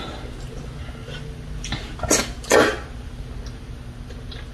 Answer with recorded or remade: recorded